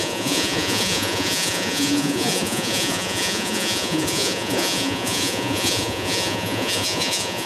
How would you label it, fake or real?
fake